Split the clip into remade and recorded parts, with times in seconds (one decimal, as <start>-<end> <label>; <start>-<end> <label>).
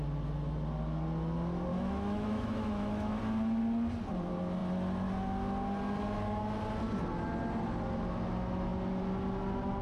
0.0-1.7 recorded; 1.7-3.2 remade; 3.2-9.8 recorded